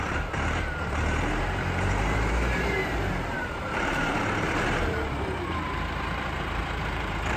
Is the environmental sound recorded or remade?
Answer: remade